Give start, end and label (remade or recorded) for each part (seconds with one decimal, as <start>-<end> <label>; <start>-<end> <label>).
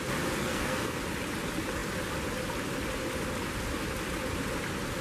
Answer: 0.0-0.4 recorded; 0.4-1.0 remade; 1.0-5.0 recorded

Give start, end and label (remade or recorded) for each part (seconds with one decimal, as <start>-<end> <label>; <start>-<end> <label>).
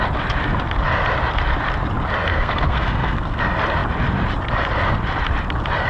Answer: 0.0-2.3 recorded; 2.3-3.4 remade; 3.4-5.9 recorded